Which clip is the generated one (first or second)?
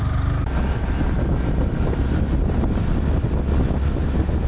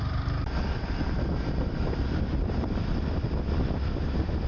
second